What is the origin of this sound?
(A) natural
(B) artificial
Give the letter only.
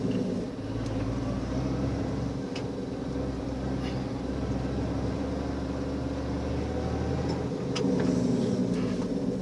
A